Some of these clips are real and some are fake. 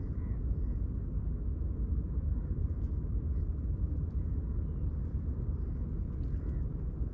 real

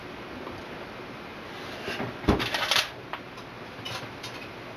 real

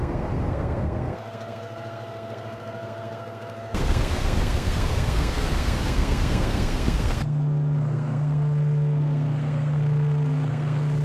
fake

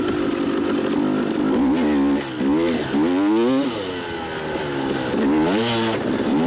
real